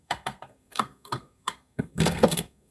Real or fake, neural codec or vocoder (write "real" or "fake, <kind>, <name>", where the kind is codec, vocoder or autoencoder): fake, codec, SNAC